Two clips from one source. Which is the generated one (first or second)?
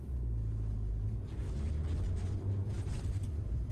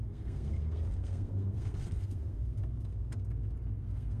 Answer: second